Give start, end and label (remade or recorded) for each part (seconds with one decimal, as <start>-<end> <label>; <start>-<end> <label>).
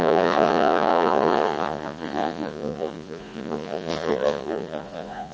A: 0.0-5.3 remade